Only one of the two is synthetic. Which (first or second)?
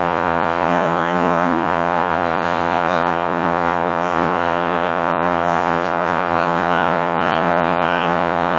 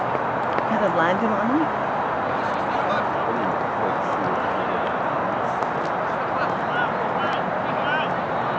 first